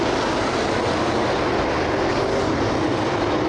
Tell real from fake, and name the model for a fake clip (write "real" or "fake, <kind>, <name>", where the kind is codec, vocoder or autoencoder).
real